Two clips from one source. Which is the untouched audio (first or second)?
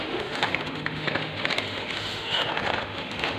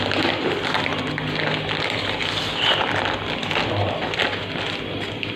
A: second